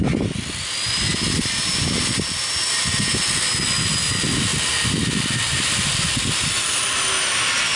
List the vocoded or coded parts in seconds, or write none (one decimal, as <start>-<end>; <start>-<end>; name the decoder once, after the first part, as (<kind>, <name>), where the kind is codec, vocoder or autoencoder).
1.7-2.4 (vocoder, BigVGAN v2); 4.5-6.8